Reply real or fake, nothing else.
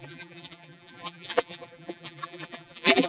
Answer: fake